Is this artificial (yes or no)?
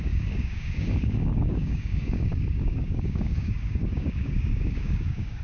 yes